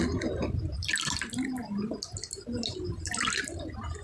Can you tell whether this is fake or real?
real